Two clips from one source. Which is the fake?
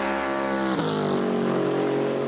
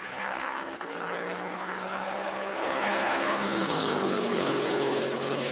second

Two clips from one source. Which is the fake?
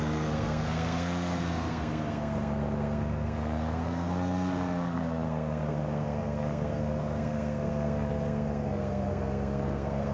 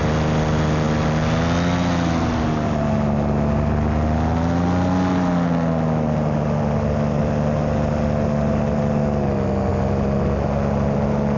first